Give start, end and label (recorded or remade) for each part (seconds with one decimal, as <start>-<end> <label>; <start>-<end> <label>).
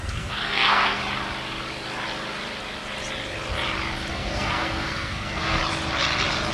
0.0-1.0 remade; 1.0-4.1 recorded; 4.1-5.6 remade; 5.6-6.5 recorded